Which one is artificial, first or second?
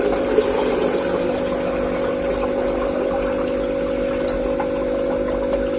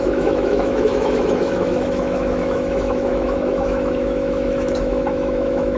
second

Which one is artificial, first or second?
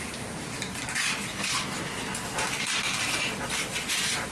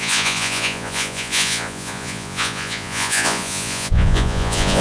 second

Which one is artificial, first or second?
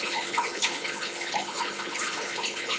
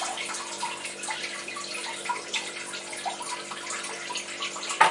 first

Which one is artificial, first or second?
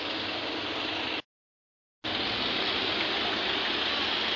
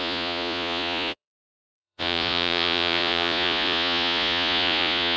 second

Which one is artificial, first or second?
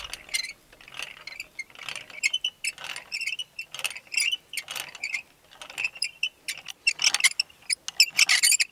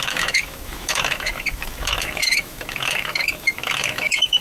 second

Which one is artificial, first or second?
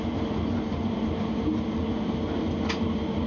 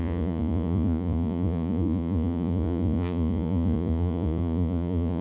second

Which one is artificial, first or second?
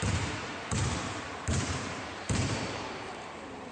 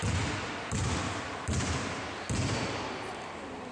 first